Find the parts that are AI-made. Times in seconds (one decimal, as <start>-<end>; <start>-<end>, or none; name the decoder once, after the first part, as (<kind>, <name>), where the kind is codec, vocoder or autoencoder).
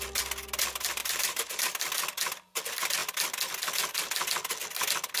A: 1.0-1.8 (vocoder, BigVGAN v2)